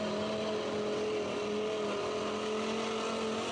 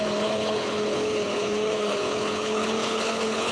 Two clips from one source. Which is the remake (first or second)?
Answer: second